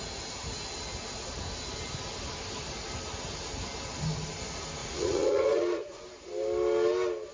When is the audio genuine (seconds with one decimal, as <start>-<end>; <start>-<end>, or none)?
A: 0.0-4.8; 6.0-7.3